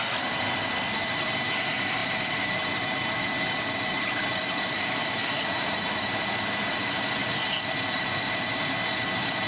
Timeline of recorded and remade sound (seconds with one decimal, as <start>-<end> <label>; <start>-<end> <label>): 0.0-2.0 recorded; 2.0-6.1 remade; 6.1-7.2 recorded; 7.2-8.3 remade; 8.3-9.5 recorded